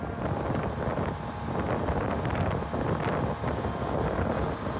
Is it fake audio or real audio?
real